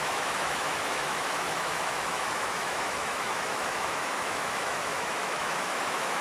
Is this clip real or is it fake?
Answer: fake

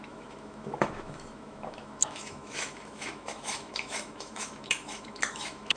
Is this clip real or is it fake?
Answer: fake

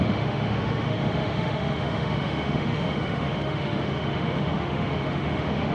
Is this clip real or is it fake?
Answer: fake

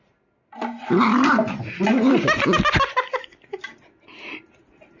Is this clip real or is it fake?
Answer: real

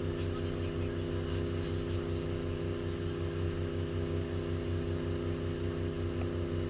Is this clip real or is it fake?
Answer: real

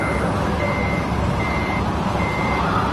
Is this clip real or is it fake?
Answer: real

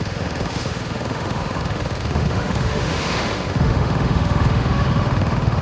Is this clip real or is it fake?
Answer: fake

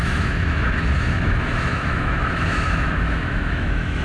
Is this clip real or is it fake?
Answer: fake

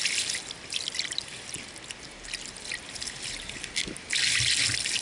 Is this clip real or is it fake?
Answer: real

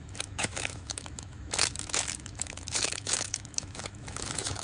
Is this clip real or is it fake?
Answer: fake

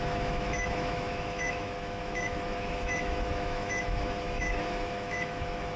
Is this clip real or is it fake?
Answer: fake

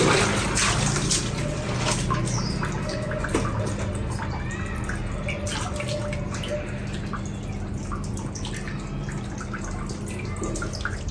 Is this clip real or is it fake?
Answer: real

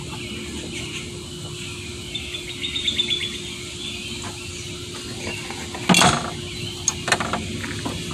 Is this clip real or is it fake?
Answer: real